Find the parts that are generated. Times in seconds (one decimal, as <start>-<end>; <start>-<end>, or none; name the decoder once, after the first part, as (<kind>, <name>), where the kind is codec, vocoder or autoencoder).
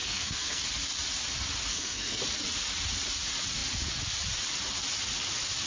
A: 0.0-0.6 (codec, SNAC); 1.7-2.2